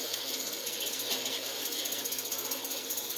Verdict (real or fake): fake